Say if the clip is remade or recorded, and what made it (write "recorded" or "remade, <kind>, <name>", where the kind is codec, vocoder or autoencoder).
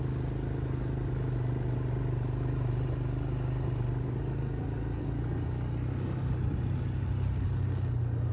recorded